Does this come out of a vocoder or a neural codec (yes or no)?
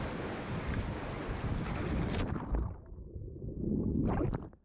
no